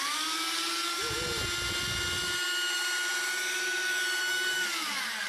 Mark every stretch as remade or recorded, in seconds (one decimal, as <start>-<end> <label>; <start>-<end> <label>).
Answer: 0.0-1.0 remade; 1.0-4.2 recorded; 4.2-5.3 remade